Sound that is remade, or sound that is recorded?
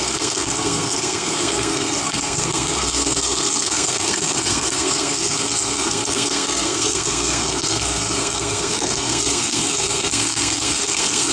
remade